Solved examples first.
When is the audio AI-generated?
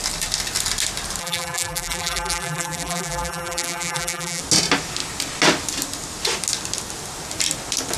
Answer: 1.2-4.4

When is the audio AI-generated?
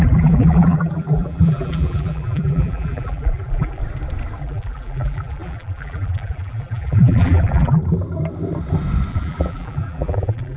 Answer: 0.0-3.8; 4.4-7.8; 9.1-10.6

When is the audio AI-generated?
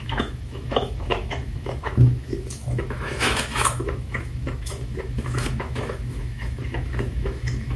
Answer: 0.0-7.8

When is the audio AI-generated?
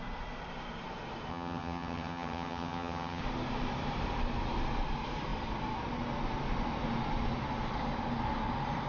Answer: 1.3-3.2